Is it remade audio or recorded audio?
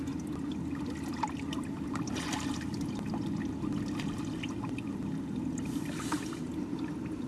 recorded